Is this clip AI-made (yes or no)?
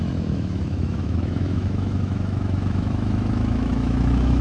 yes